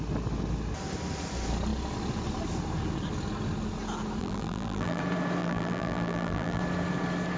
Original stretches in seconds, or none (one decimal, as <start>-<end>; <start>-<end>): 0.0-4.2; 5.0-5.4; 6.6-7.4